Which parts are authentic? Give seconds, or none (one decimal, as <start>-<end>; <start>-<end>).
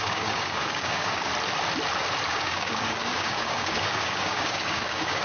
1.3-2.3